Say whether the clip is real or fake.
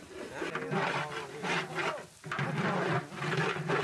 real